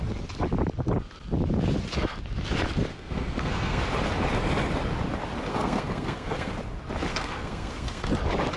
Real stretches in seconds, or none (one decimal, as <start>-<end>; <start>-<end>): 0.0-2.9; 3.8-5.5; 6.5-7.1; 8.1-8.6